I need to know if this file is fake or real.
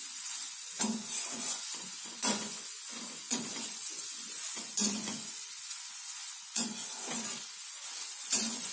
fake